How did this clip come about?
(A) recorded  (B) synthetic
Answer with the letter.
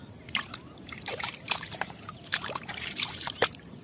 B